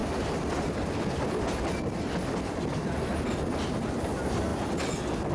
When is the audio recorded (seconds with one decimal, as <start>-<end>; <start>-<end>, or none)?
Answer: 0.0-5.3